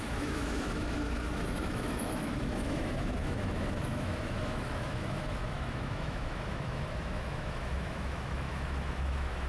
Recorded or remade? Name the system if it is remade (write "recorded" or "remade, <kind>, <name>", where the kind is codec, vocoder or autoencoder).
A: remade, autoencoder, DAC-VAE